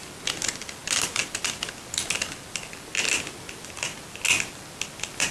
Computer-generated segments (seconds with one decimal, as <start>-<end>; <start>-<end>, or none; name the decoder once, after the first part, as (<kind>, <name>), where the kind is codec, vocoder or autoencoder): none